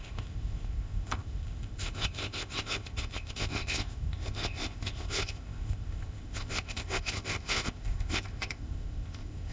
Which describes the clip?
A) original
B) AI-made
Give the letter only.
B